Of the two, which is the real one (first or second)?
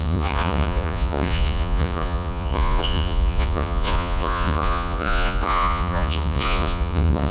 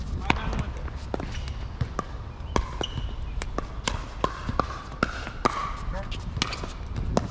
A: second